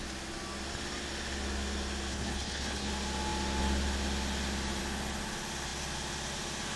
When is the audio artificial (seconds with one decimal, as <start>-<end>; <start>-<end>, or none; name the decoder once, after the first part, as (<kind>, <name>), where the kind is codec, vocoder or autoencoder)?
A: 2.1-2.9 (codec, HILCodec)